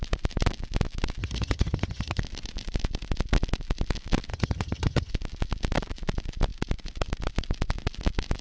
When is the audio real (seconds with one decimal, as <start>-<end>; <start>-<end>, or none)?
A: 0.0-1.2; 2.2-4.3; 5.1-8.4